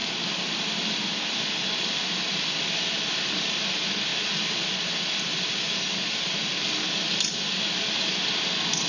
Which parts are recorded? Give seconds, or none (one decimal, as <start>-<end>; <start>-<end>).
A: 2.8-8.9